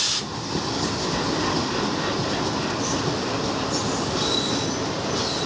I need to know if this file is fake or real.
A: real